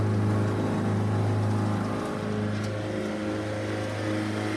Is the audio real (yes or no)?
yes